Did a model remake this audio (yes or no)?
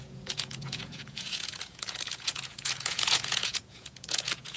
yes